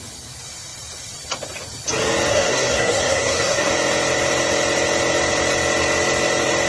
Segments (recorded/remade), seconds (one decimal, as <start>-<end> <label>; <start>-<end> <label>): 0.0-2.3 recorded; 2.3-3.7 remade; 3.7-6.7 recorded